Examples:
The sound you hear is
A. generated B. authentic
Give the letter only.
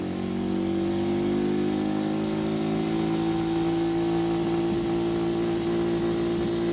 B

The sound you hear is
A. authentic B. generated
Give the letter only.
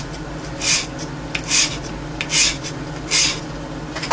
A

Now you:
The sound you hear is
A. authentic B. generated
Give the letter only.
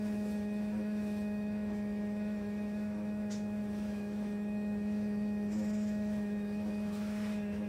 B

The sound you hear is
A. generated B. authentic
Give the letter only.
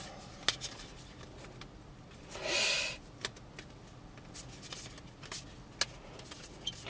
B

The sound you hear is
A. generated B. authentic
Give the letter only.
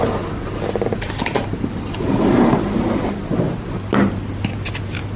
B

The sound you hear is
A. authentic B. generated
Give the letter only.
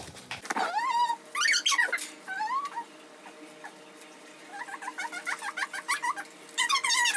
A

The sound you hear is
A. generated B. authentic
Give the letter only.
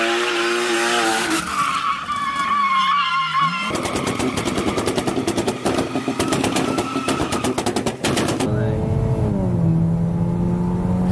B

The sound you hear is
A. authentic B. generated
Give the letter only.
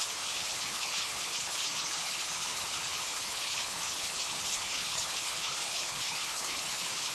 B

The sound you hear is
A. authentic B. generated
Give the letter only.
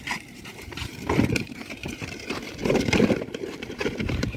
B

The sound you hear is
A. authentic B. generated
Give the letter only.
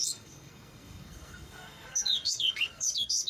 B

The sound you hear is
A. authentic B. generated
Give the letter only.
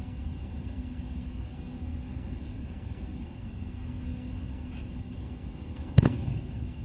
B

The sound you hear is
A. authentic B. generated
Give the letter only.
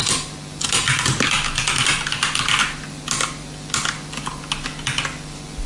A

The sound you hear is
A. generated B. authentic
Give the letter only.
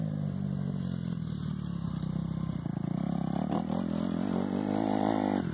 B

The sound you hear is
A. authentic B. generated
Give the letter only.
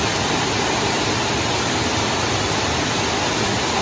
A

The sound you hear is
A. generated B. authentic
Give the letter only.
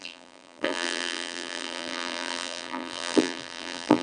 A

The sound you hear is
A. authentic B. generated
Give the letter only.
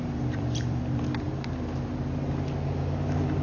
B